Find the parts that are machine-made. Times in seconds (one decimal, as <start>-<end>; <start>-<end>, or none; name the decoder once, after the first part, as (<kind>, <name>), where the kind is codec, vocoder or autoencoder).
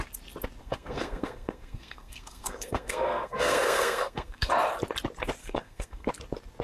0.6-4.5 (codec, SNAC); 5.4-6.1